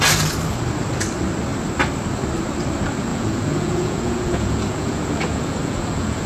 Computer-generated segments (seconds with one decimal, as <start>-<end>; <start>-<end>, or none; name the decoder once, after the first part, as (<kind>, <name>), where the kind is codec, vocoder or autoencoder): 3.1-6.3 (vocoder, Vocos)

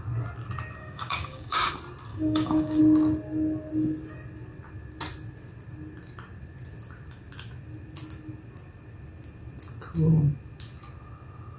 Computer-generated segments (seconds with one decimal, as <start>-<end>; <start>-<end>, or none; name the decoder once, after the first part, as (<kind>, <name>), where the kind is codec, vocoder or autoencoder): 0.8-1.7 (codec, DAC); 2.1-2.8

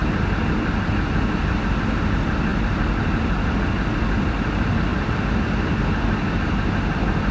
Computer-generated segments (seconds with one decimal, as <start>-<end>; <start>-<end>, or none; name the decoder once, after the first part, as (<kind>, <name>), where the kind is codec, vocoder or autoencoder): none

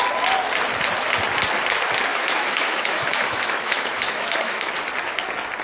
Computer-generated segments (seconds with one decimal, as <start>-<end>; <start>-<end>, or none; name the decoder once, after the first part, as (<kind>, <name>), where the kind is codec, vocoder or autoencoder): 2.1-4.7 (autoencoder, DAC-VAE)

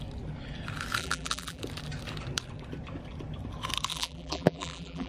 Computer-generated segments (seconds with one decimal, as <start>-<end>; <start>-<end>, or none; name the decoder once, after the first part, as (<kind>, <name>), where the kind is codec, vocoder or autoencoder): 1.0-1.6 (vocoder, BigVGAN v2); 3.9-5.1

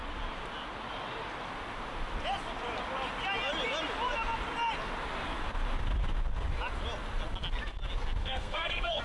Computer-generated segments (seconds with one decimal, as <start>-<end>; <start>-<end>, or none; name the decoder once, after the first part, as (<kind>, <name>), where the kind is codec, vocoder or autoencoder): 8.2-9.0 (codec, SNAC)

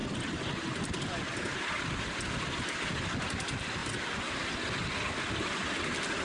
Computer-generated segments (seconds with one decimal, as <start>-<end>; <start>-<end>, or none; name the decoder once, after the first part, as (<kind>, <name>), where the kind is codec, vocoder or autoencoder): none

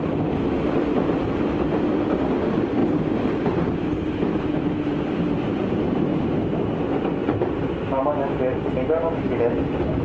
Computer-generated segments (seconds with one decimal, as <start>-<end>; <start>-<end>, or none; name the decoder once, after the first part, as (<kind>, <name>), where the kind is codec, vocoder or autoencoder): 2.8-6.4 (vocoder, BigVGAN v2); 7.2-7.8